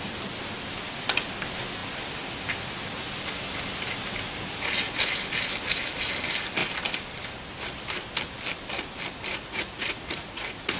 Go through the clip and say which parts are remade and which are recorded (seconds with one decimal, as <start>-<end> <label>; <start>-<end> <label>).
0.0-9.3 recorded; 9.3-10.8 remade